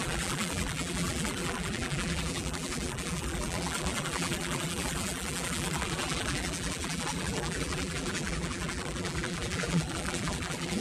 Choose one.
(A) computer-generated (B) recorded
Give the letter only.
A